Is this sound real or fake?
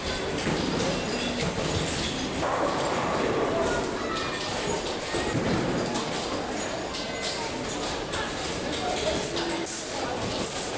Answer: real